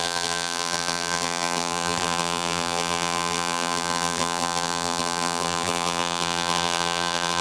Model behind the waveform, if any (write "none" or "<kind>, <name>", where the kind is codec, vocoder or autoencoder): vocoder, BigVGAN v2